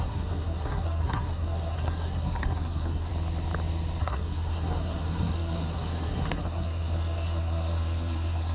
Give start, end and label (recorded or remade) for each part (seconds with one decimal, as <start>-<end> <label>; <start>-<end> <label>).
0.0-3.1 remade; 3.1-4.0 recorded; 4.0-8.5 remade